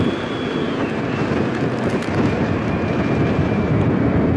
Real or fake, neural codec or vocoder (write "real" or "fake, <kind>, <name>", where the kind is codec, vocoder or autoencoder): real